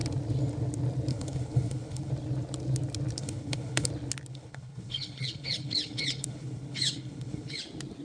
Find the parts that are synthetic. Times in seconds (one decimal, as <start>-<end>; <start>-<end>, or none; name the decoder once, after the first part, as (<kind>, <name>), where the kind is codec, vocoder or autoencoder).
1.1-2.1 (codec, HILCodec); 3.2-3.9; 4.3-7.6